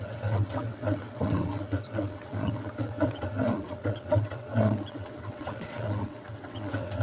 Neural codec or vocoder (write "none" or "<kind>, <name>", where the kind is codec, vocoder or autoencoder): vocoder, WaveNeXt